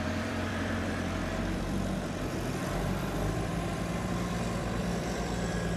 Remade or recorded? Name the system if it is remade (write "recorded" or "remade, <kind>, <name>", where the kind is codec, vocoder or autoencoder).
remade, vocoder, BigVGAN v2